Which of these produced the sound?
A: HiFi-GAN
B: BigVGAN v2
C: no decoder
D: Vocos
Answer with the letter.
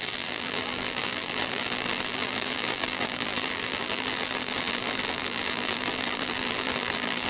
B